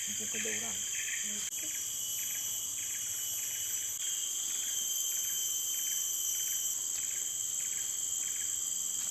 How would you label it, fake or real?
real